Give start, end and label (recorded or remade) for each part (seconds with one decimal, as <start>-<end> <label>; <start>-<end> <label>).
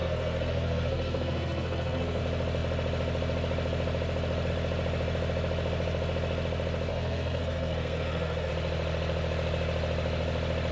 0.0-2.2 remade; 2.2-6.9 recorded; 6.9-8.5 remade; 8.5-10.7 recorded